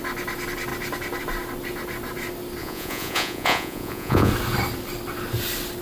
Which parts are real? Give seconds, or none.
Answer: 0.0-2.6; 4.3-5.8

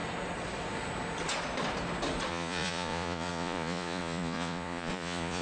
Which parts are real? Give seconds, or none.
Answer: 0.0-2.3

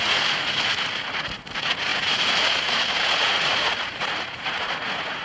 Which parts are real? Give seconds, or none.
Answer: none

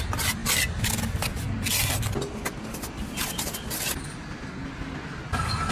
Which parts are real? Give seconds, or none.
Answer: 0.0-5.7

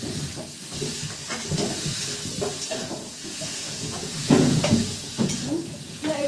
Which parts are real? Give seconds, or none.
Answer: 0.0-2.8